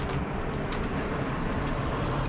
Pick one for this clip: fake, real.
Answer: real